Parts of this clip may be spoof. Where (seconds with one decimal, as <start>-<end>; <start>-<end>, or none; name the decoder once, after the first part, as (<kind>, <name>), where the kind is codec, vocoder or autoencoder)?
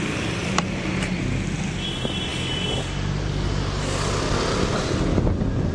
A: 0.4-1.2 (vocoder, BigVGAN v2)